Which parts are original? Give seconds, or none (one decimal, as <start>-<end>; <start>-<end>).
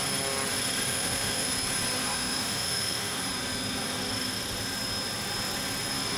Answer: 0.0-0.9; 1.5-2.0; 3.2-6.2